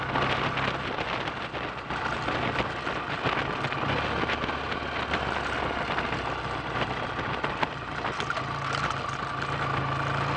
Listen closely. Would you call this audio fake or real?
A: real